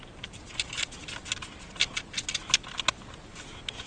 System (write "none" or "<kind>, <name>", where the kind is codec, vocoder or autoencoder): none